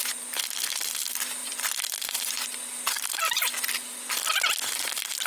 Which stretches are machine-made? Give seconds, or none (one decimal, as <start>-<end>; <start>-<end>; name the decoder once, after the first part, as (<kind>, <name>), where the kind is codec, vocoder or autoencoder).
none